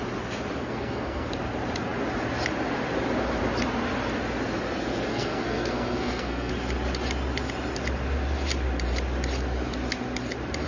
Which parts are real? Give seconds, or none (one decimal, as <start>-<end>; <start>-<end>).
0.0-0.6; 1.3-5.1; 6.5-10.7